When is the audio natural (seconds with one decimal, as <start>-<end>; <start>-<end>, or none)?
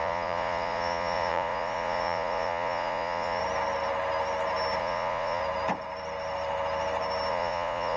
3.4-4.8; 5.4-7.3